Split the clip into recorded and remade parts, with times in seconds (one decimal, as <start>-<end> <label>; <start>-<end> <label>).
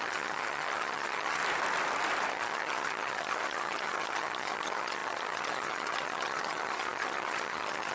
0.0-1.4 remade; 1.4-2.3 recorded; 2.3-7.9 remade